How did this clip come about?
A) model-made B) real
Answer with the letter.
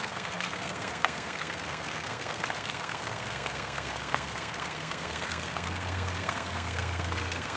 A